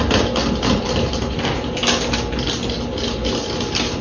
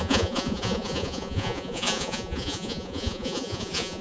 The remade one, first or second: second